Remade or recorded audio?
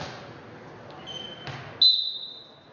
recorded